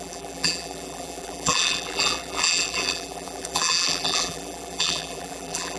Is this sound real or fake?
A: fake